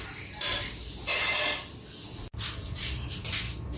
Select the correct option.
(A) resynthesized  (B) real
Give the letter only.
B